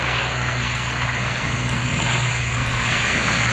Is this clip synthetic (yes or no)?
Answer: yes